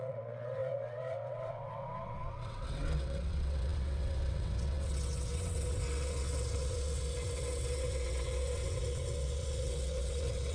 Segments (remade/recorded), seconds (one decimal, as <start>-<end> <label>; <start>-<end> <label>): 0.0-10.5 remade